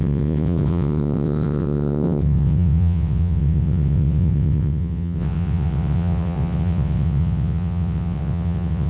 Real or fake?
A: fake